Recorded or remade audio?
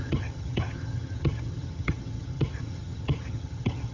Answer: remade